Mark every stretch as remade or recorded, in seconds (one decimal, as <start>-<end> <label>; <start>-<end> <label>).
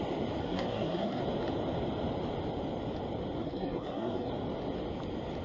0.0-0.4 recorded; 0.4-1.2 remade; 1.2-3.4 recorded; 3.4-4.3 remade; 4.3-5.4 recorded